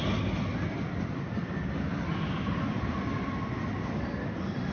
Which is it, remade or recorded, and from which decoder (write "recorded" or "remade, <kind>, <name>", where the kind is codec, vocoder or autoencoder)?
recorded